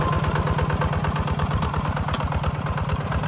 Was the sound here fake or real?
real